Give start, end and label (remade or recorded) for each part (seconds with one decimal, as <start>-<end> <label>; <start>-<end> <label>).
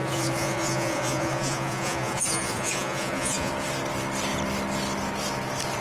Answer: 0.0-3.5 remade; 3.5-5.8 recorded